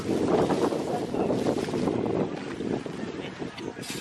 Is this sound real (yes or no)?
yes